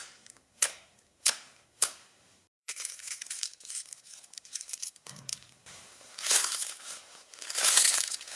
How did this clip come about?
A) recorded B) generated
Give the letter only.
B